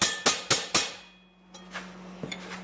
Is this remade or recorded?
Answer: recorded